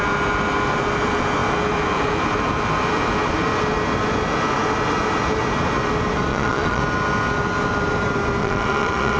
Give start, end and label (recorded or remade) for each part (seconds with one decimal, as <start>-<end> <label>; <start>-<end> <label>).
0.0-6.3 recorded; 6.3-6.8 remade; 6.8-8.4 recorded; 8.4-9.2 remade